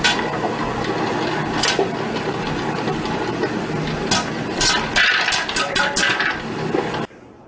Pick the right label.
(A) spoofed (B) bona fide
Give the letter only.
B